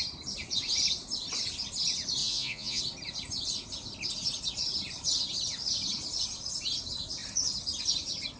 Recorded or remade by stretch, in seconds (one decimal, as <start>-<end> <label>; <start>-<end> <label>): 0.0-2.2 recorded; 2.2-2.8 remade; 2.8-8.4 recorded